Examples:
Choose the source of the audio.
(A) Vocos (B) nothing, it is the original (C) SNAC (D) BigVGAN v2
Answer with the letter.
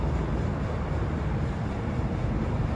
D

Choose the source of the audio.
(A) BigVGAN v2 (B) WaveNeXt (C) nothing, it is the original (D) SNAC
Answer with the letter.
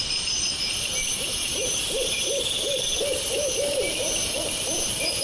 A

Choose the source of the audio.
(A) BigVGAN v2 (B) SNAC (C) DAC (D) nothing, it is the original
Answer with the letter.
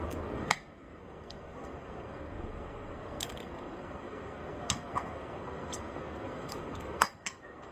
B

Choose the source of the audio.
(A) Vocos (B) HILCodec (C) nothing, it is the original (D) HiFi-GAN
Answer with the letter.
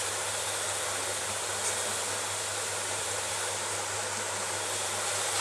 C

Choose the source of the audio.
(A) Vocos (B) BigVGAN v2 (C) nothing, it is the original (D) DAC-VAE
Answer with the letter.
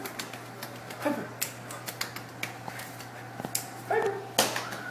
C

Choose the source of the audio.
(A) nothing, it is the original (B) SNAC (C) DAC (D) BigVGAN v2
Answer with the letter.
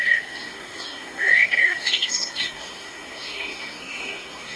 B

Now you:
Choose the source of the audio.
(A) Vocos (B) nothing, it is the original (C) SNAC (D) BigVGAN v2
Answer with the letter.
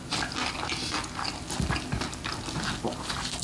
B